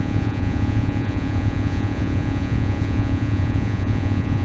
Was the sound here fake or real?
fake